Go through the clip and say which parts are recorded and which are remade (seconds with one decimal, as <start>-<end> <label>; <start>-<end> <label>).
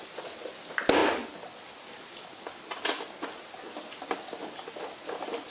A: 0.0-5.5 recorded